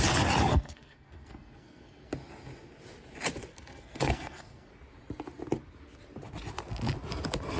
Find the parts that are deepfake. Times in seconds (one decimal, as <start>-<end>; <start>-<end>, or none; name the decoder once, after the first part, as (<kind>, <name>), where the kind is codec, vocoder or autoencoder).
0.5-2.1 (codec, SNAC); 3.5-4.7